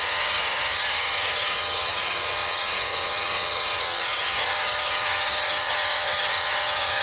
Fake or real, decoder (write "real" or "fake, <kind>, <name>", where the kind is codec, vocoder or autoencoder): fake, vocoder, HiFi-GAN